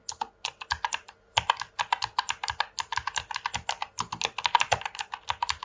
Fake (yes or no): no